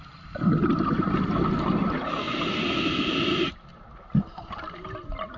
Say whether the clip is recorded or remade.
recorded